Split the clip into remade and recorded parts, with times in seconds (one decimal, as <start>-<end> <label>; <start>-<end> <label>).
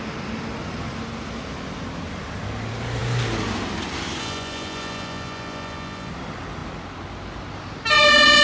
0.0-4.2 recorded; 4.2-6.1 remade; 6.1-8.4 recorded